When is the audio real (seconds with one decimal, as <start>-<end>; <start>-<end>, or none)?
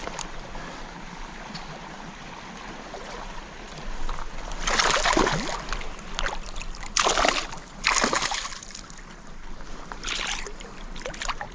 2.6-11.5